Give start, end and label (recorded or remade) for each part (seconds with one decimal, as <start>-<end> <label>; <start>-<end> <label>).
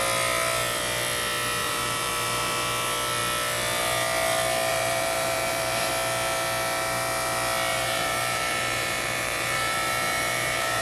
0.0-1.6 recorded; 1.6-2.1 remade; 2.1-4.7 recorded; 4.7-5.9 remade; 5.9-7.7 recorded; 7.7-10.8 remade